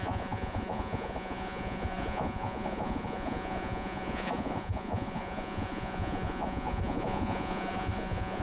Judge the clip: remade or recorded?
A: remade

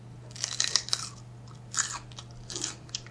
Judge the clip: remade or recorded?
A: recorded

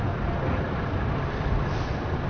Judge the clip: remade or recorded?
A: recorded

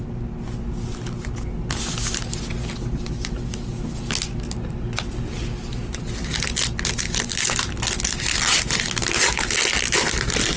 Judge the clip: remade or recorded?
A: recorded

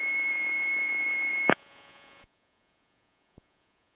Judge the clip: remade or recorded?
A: remade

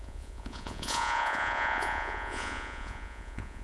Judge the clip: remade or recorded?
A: remade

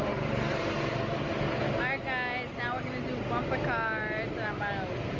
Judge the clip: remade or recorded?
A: recorded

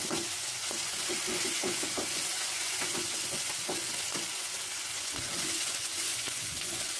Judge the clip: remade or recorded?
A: remade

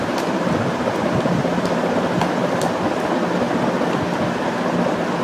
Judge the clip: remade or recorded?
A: recorded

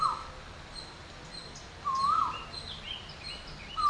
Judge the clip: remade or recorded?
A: recorded